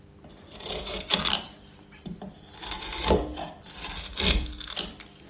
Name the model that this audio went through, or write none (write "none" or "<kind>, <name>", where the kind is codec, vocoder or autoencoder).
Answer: vocoder, BigVGAN v2